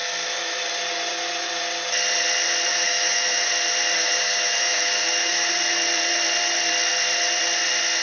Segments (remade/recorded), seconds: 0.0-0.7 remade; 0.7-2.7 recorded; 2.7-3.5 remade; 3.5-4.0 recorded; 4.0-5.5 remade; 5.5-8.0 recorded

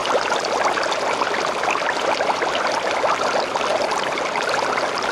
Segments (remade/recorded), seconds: 0.0-5.1 recorded

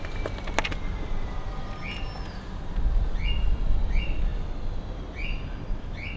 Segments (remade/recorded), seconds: 0.0-6.2 recorded